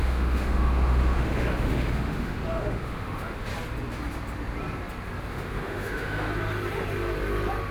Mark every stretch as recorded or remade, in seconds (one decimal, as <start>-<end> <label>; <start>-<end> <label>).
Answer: 0.0-3.5 remade; 3.5-5.3 recorded; 5.3-6.3 remade; 6.3-7.7 recorded